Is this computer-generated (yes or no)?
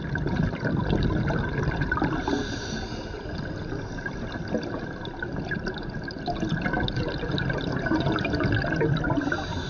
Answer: no